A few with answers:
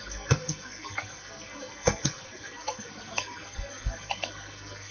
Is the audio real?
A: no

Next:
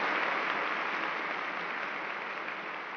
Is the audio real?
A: yes